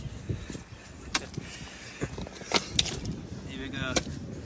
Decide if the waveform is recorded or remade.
recorded